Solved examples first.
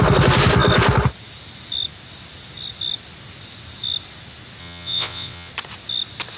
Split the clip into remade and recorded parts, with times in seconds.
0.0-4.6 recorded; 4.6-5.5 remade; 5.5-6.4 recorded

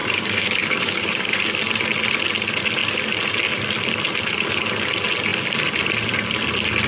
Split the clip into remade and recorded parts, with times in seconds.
0.0-1.4 remade; 1.4-6.9 recorded

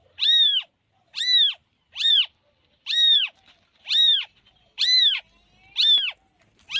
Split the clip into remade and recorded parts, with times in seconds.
0.0-1.6 recorded; 1.6-5.0 remade; 5.0-6.8 recorded

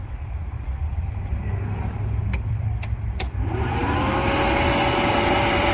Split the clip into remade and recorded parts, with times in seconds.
0.0-1.5 remade; 1.5-2.5 recorded; 2.5-3.8 remade; 3.8-5.1 recorded; 5.1-5.7 remade

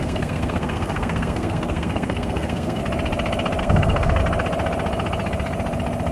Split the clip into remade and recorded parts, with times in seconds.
0.0-2.8 remade; 2.8-3.6 recorded; 3.6-4.2 remade; 4.2-6.1 recorded